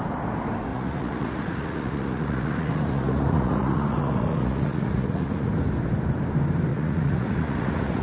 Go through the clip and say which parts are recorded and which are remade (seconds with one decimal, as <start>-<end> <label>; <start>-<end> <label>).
0.0-0.7 recorded; 0.7-5.5 remade; 5.5-6.7 recorded; 6.7-8.0 remade